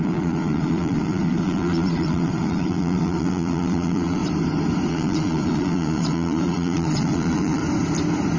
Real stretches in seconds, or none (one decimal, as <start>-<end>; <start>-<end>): 4.2-4.9; 7.6-8.4